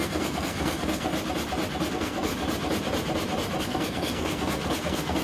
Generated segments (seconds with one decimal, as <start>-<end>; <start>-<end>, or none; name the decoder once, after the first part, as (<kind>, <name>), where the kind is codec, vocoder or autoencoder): 0.0-1.1 (codec, SNAC); 1.9-2.3; 3.6-5.2